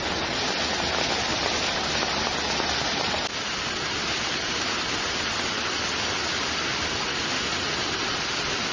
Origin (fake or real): real